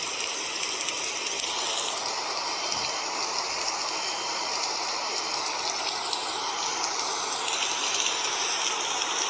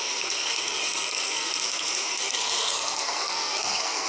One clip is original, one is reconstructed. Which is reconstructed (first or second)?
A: second